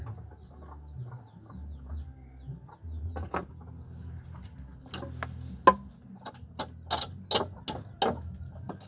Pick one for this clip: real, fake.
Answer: real